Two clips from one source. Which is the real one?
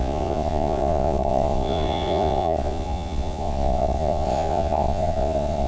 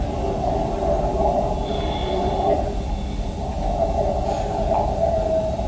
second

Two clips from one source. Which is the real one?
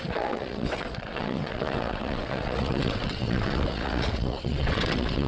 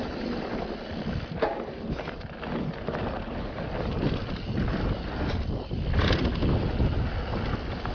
second